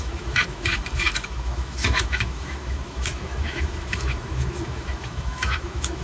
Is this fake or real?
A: fake